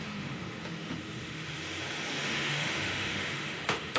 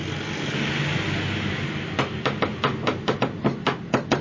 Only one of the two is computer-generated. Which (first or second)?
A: first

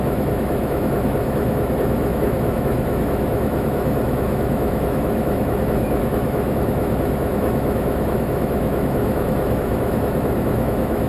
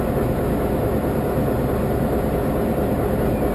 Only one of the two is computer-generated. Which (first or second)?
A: first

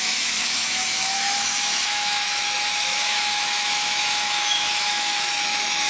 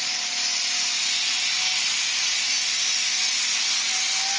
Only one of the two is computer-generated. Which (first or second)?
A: first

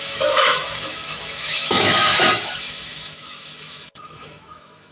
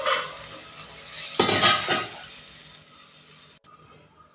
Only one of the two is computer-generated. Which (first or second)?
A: first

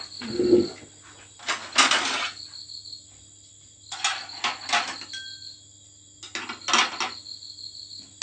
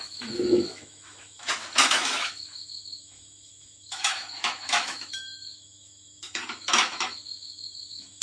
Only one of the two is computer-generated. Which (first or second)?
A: second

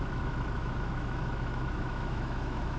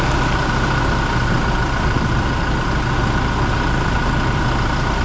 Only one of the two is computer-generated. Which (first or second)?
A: first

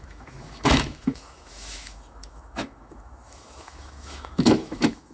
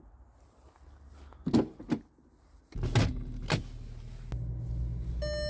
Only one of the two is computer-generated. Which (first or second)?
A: first